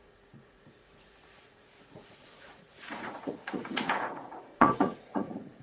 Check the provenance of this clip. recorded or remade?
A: remade